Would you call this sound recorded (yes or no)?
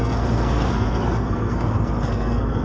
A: no